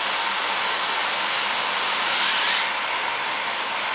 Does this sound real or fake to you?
real